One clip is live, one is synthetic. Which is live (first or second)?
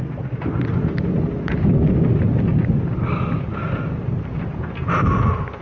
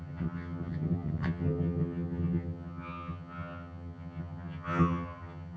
first